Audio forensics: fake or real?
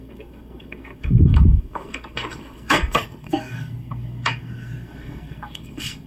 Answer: fake